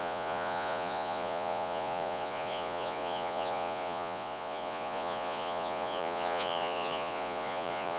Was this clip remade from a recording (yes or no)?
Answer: yes